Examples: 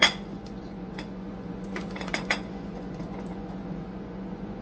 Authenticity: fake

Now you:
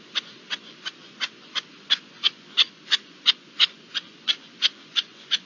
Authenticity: fake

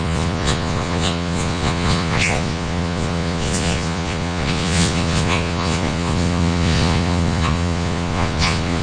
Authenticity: fake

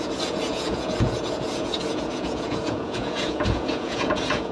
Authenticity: fake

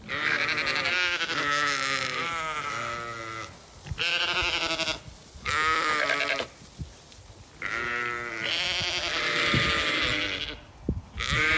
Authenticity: real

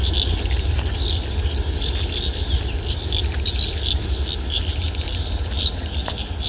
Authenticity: real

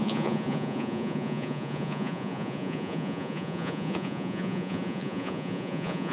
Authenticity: fake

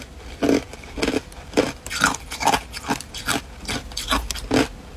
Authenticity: real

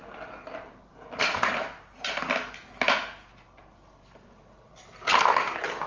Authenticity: real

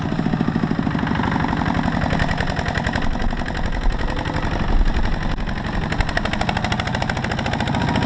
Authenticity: real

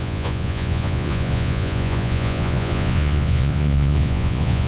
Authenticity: fake